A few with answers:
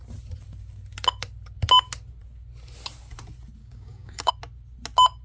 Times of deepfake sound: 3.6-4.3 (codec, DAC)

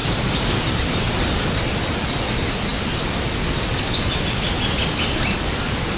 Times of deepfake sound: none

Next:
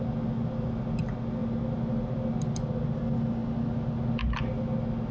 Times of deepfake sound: none

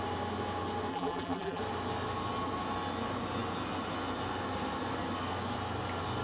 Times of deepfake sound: 0.9-1.6 (vocoder, BigVGAN v2)